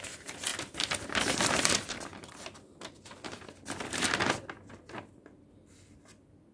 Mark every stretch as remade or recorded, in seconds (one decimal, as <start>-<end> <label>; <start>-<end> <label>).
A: 0.0-6.5 recorded